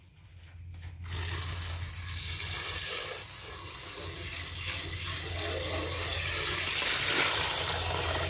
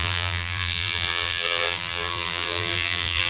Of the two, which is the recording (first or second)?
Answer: first